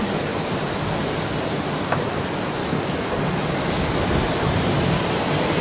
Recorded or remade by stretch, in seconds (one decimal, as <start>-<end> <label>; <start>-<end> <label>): 0.0-2.6 recorded; 2.6-3.2 remade; 3.2-5.6 recorded

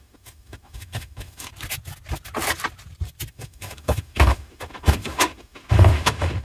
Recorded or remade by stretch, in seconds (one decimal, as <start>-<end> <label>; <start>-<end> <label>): 0.0-1.5 remade; 1.5-3.3 recorded; 3.3-6.4 remade

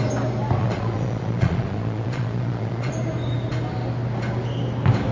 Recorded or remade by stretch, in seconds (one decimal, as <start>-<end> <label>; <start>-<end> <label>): 0.0-0.6 recorded; 0.6-2.9 remade; 2.9-5.1 recorded

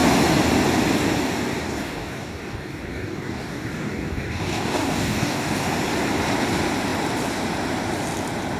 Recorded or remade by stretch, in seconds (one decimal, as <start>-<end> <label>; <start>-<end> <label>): 0.0-1.6 recorded; 1.6-5.7 remade; 5.7-8.6 recorded

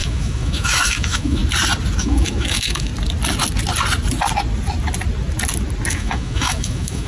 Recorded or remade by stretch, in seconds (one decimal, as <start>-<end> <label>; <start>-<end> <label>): 0.0-1.4 remade; 1.4-2.0 recorded; 2.0-2.9 remade; 2.9-5.9 recorded; 5.9-7.1 remade

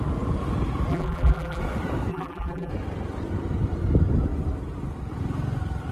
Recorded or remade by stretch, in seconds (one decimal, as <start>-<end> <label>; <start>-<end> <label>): 0.0-0.9 recorded; 0.9-1.6 remade; 1.6-2.1 recorded; 2.1-2.7 remade; 2.7-5.9 recorded